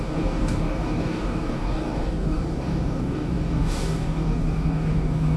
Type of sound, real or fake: fake